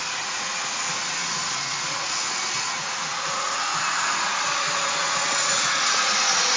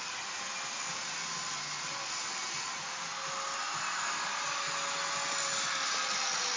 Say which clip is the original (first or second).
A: second